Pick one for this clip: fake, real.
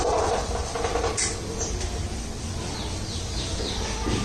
real